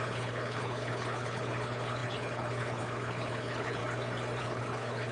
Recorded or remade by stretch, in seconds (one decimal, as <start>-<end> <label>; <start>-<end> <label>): 0.0-3.8 remade; 3.8-4.4 recorded; 4.4-5.1 remade